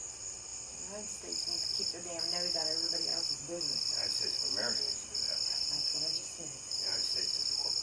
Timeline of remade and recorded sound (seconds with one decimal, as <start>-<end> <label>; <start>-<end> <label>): 0.0-5.5 recorded; 5.5-7.2 remade; 7.2-7.8 recorded